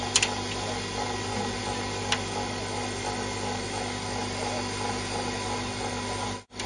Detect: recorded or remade recorded